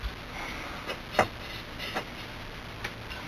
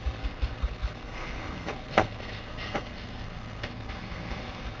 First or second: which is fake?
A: second